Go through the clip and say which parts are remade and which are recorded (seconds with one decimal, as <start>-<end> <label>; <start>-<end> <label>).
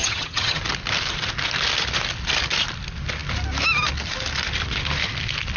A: 0.0-0.6 remade; 0.6-5.6 recorded